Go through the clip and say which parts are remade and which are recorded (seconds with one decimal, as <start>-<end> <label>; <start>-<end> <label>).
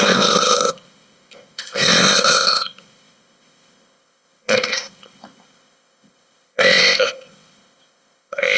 0.0-8.6 remade